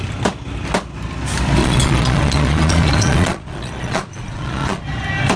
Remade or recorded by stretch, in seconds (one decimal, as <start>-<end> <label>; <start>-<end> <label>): 0.0-1.6 recorded; 1.6-4.8 remade; 4.8-5.4 recorded